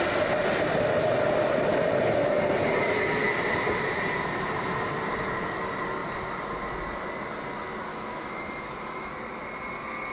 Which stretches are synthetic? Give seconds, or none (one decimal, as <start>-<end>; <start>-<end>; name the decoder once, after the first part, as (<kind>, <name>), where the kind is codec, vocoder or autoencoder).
7.9-9.1 (autoencoder, DAC-VAE)